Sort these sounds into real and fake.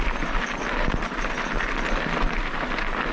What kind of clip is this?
real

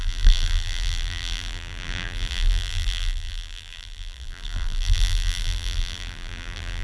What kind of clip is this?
fake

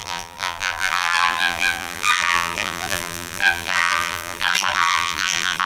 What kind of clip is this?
fake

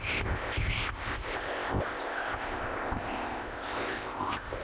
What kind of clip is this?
fake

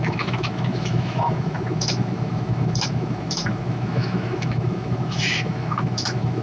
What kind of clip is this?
fake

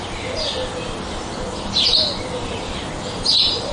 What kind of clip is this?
real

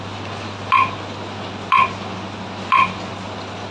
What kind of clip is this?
real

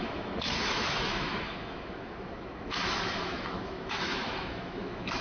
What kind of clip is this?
fake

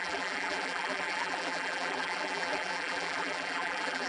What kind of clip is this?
fake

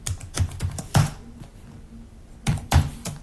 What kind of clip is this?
fake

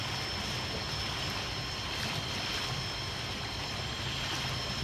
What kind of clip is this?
real